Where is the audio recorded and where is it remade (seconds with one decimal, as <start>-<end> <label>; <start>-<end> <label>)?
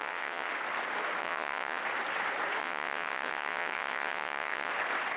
0.0-0.5 remade; 0.5-1.2 recorded; 1.2-1.8 remade; 1.8-2.6 recorded; 2.6-4.7 remade; 4.7-5.2 recorded